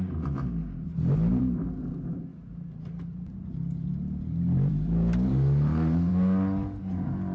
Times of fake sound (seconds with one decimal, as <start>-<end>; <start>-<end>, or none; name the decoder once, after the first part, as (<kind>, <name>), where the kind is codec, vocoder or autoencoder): 1.3-1.8 (vocoder, BigVGAN v2); 2.3-6.1